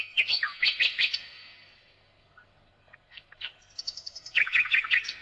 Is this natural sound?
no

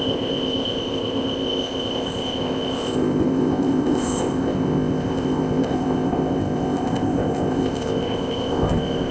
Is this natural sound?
no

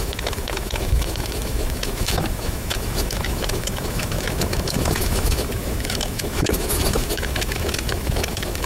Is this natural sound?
no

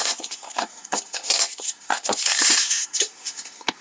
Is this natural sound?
no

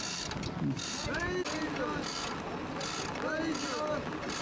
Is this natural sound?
yes